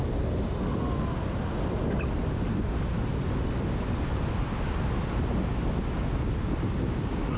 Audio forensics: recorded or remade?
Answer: recorded